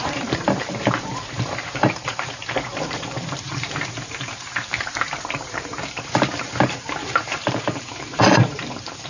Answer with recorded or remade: remade